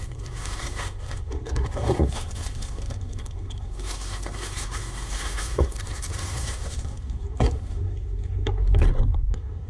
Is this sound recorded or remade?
remade